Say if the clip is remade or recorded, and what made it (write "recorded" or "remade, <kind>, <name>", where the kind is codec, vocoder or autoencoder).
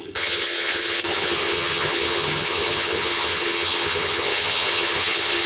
remade, vocoder, HiFi-GAN